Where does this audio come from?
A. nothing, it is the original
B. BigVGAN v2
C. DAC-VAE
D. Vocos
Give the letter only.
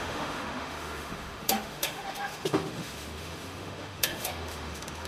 C